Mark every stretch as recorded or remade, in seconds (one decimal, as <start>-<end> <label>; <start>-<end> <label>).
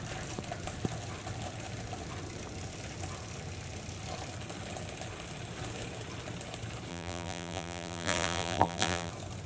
0.0-6.9 recorded; 6.9-9.1 remade; 9.1-9.5 recorded